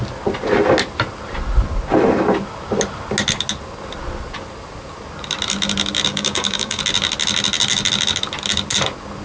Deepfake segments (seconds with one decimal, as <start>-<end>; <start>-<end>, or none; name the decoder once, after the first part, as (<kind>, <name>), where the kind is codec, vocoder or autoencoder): 6.1-6.8 (codec, DAC)